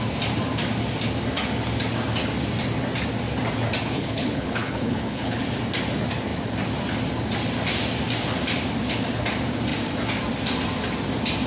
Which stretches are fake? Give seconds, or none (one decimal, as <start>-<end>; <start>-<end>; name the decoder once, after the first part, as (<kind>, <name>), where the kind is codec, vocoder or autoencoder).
3.8-5.4 (codec, HILCodec)